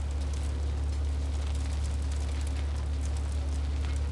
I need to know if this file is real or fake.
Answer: real